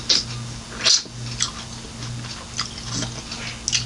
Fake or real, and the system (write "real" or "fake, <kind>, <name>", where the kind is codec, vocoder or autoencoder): real